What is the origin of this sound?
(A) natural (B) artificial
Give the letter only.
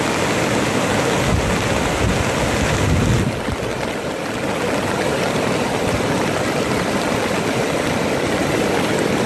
A